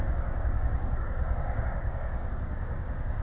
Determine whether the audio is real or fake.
fake